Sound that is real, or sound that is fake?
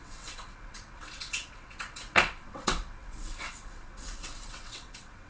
fake